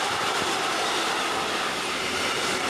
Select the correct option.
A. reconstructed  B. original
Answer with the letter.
B